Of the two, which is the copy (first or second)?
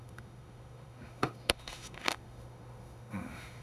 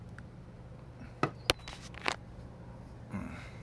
first